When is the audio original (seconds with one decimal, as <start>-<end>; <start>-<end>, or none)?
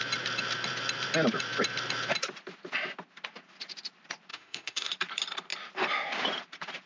0.0-4.3; 4.9-6.9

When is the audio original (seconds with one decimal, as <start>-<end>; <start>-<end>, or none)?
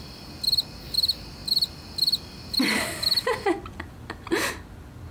0.0-5.1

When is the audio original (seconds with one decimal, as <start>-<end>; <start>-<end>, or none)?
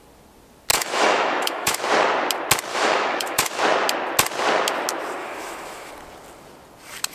0.0-0.7; 1.8-2.7; 3.6-5.2; 5.9-7.1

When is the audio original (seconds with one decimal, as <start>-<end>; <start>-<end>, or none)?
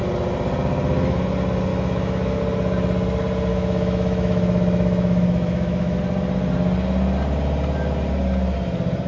0.0-1.7; 2.4-3.5; 6.0-9.1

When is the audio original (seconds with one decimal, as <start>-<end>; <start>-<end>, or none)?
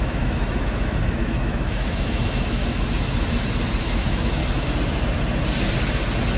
2.6-3.8; 4.4-6.4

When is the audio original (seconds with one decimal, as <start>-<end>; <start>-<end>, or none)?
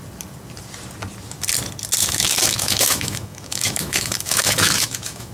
0.0-2.0